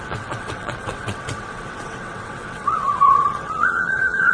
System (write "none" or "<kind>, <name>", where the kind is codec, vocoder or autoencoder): vocoder, WaveNeXt